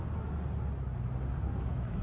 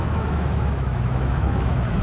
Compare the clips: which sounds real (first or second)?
first